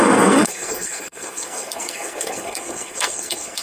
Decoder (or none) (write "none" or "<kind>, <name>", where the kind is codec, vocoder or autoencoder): codec, SNAC